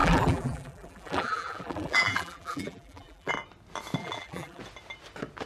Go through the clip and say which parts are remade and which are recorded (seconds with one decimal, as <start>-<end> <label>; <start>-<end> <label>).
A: 0.0-3.3 remade; 3.3-4.0 recorded; 4.0-4.6 remade; 4.6-5.5 recorded

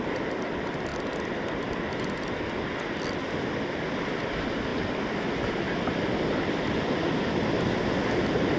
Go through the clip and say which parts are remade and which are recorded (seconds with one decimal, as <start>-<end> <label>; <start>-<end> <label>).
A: 0.0-8.6 recorded

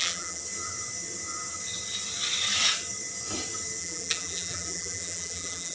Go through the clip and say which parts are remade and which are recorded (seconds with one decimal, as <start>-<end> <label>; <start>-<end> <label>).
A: 0.0-0.4 remade; 0.4-3.8 recorded; 3.8-5.7 remade

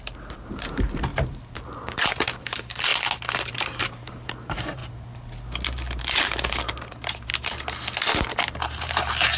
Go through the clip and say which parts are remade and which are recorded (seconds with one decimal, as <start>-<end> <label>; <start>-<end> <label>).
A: 0.0-2.9 remade; 2.9-3.6 recorded; 3.6-4.8 remade; 4.8-6.0 recorded; 6.0-7.3 remade; 7.3-8.6 recorded; 8.6-9.4 remade